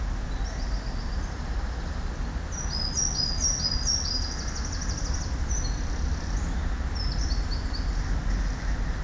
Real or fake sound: real